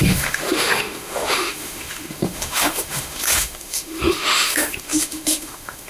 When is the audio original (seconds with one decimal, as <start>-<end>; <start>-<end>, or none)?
none